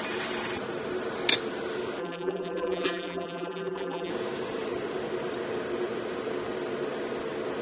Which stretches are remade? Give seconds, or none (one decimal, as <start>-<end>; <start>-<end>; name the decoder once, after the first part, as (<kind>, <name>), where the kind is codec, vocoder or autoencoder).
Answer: 2.0-4.1 (vocoder, BigVGAN v2)